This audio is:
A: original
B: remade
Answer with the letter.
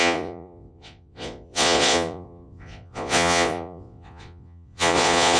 B